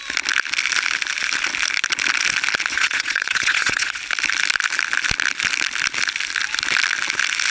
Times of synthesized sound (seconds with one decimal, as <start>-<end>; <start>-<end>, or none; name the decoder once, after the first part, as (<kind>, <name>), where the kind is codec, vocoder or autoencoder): 2.7-4.0 (vocoder, Vocos)